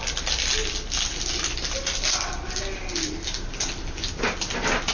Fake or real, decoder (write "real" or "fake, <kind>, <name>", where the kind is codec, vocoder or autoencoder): real